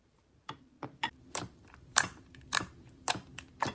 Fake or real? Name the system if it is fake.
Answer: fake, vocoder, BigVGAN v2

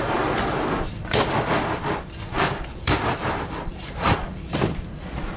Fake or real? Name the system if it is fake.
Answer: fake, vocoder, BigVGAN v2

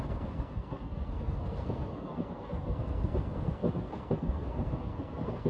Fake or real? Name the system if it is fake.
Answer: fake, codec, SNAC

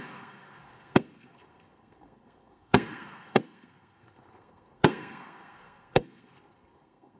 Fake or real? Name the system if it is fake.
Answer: fake, codec, SNAC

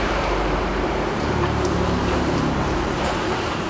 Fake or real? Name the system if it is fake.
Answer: fake, vocoder, BigVGAN v2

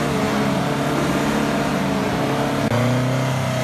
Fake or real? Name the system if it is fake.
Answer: real